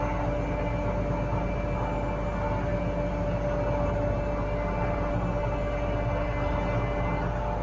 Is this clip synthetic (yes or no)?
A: no